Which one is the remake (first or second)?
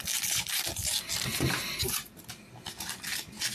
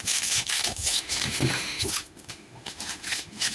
second